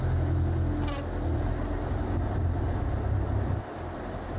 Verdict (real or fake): real